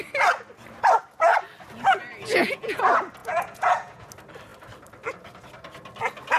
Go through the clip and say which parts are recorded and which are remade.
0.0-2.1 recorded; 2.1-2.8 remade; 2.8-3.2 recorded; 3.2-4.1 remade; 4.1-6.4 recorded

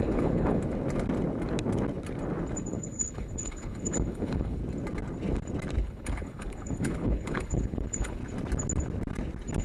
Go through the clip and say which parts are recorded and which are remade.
0.0-0.6 remade; 0.6-2.7 recorded; 2.7-4.6 remade; 4.6-5.8 recorded; 5.8-8.2 remade; 8.2-9.6 recorded

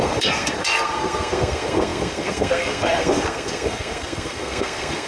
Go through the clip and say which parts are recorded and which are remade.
0.0-5.1 remade

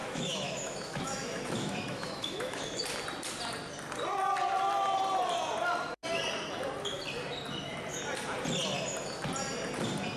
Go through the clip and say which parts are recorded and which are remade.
0.0-2.8 remade; 2.8-10.2 recorded